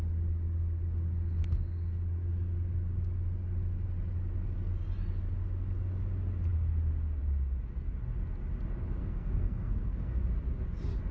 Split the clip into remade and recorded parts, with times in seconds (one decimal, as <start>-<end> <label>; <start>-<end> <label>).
0.0-9.0 recorded; 9.0-10.2 remade; 10.2-11.1 recorded